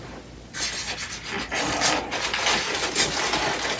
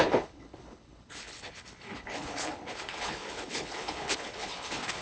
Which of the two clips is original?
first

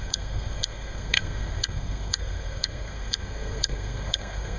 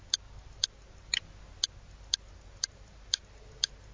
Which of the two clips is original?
second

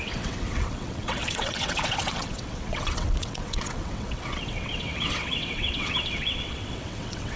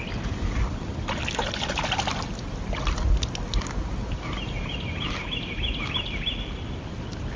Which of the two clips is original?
second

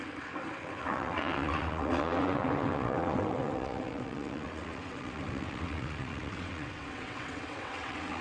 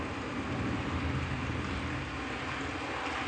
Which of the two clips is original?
second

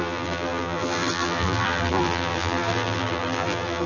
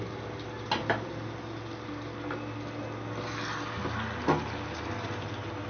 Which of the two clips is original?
second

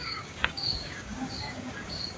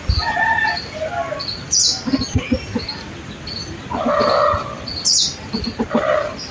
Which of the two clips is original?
second